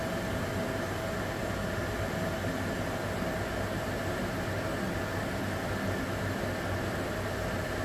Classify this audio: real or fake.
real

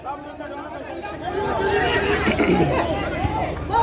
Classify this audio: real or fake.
real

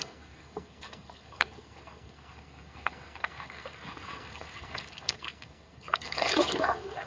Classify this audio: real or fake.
fake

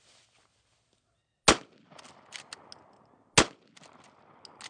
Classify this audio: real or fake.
real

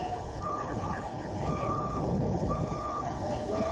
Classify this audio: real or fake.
fake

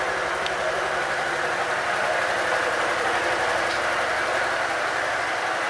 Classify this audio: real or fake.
real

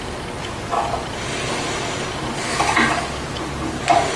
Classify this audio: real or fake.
real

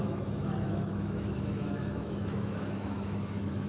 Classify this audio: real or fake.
fake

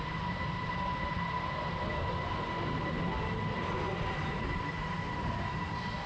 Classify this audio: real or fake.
real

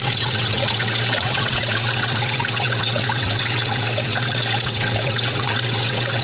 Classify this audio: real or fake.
fake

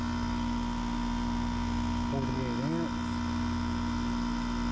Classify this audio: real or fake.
real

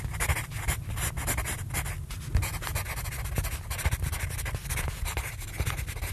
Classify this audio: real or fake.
real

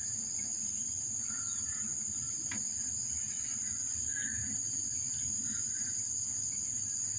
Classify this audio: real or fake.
real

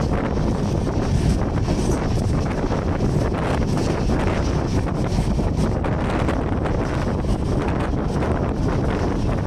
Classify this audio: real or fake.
real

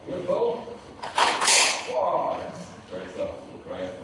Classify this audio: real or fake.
fake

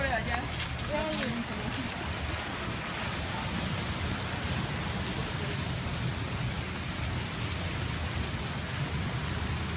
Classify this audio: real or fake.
real